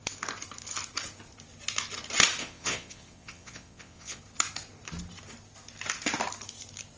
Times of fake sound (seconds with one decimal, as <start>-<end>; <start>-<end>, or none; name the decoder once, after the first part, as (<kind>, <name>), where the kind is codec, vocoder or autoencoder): 2.4-4.2 (vocoder, WaveNeXt)